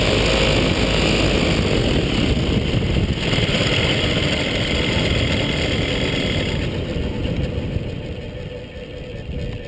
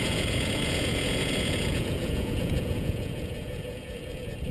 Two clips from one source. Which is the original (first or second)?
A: first